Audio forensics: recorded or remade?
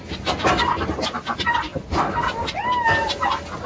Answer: recorded